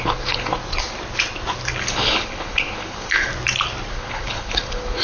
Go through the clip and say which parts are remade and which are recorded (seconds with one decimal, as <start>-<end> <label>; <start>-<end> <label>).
0.0-0.6 remade; 0.6-1.9 recorded; 1.9-3.3 remade; 3.3-3.9 recorded; 3.9-5.0 remade